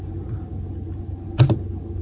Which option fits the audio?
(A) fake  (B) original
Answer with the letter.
B